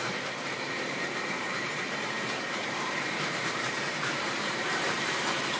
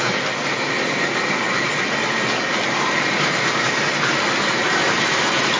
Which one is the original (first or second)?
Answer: second